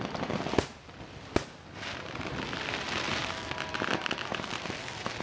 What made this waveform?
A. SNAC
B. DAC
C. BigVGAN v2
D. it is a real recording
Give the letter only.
D